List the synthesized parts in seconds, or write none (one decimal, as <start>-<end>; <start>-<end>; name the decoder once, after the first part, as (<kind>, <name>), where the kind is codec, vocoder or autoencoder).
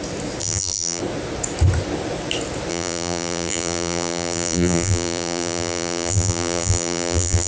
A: 0.4-1.0 (vocoder, BigVGAN v2); 2.7-7.5